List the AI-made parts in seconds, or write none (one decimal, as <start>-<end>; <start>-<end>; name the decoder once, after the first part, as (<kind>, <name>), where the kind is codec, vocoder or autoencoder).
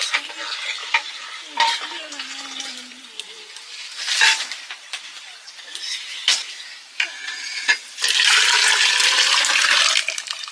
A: 0.8-2.1 (vocoder, BigVGAN v2)